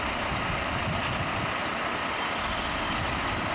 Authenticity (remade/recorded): recorded